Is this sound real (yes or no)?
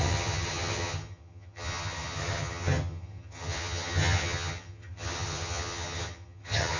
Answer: no